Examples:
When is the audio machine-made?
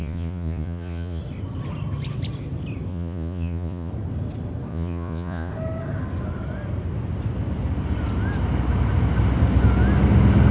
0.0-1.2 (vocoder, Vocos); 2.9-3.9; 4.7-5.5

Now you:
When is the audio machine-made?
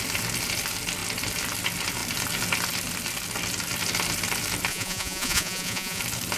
4.7-6.0 (vocoder, Vocos)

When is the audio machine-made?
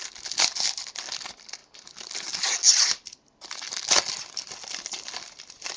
none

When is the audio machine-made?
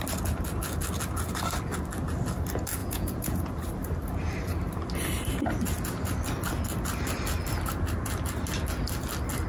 2.8-3.5 (vocoder, Vocos)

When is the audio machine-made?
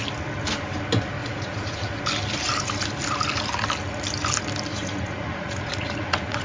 1.2-2.0 (vocoder, Vocos); 4.7-6.4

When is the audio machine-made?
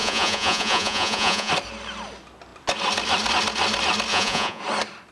0.0-1.5 (vocoder, Vocos); 4.1-4.6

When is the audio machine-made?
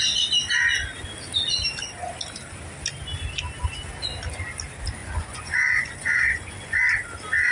5.0-6.8 (vocoder, Vocos)